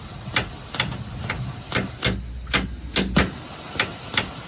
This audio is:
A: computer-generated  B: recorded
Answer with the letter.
B